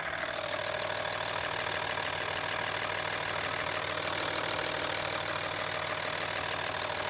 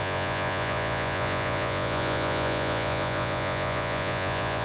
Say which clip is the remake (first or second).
second